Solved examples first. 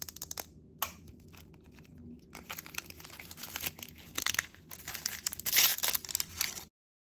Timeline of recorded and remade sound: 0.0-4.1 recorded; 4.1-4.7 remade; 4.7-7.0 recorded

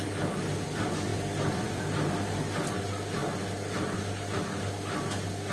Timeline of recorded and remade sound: 0.0-1.1 recorded; 1.1-1.8 remade; 1.8-5.5 recorded

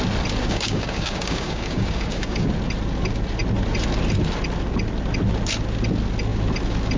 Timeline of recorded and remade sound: 0.0-0.4 recorded; 0.4-2.5 remade; 2.5-7.0 recorded

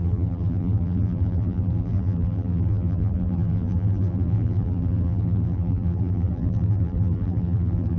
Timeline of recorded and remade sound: 0.0-8.0 remade

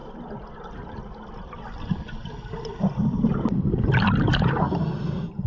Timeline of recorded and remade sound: 0.0-5.5 recorded

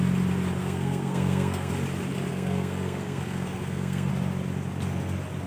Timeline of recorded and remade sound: 0.0-0.6 recorded; 0.6-1.7 remade; 1.7-2.3 recorded; 2.3-4.1 remade; 4.1-5.5 recorded